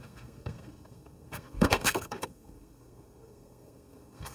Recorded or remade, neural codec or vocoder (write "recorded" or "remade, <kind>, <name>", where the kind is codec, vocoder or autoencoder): remade, codec, SNAC